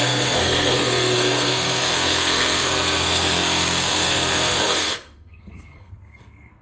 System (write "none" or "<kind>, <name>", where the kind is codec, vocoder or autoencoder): codec, SNAC